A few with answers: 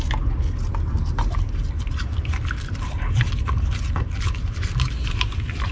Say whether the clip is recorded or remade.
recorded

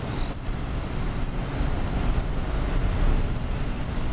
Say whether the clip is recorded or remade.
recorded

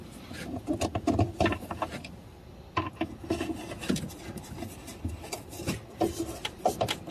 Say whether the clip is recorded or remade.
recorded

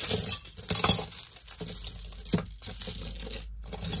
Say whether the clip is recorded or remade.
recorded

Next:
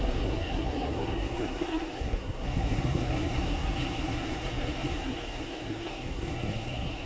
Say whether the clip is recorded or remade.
remade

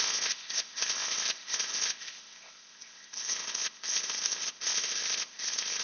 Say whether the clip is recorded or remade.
remade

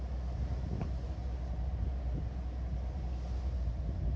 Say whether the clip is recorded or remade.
recorded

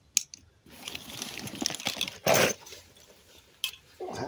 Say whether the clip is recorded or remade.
recorded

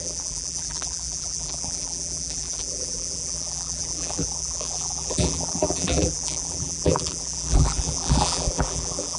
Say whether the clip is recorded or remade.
remade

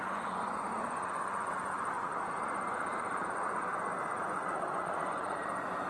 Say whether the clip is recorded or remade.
remade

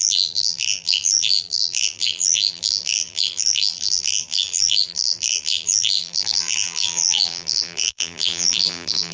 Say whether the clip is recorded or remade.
remade